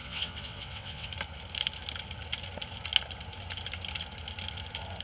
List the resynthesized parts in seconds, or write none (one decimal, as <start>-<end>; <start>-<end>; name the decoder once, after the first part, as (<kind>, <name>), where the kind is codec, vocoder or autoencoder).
0.0-1.1 (vocoder, WaveNeXt)